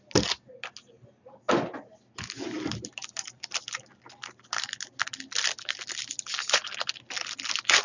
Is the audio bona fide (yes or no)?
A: yes